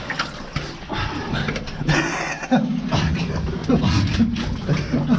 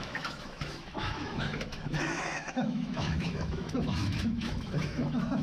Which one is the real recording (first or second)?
first